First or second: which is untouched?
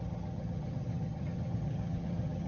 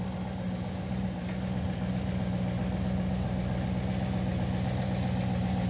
second